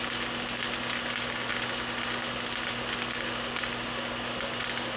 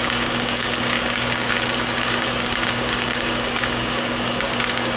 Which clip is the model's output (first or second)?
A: second